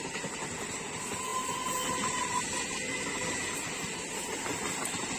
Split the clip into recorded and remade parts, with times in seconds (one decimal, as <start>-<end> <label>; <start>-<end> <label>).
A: 0.0-5.2 recorded